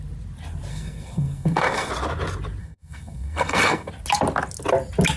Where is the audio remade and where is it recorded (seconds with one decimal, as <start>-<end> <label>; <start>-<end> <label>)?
0.0-0.7 recorded; 0.7-1.9 remade; 1.9-2.6 recorded; 2.6-3.9 remade; 3.9-5.2 recorded